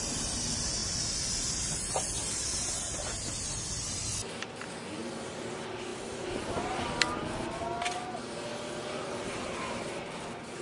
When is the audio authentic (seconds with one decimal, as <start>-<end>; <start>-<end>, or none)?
0.0-10.6